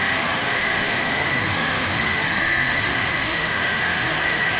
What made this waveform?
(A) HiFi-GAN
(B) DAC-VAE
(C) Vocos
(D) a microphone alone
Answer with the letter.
B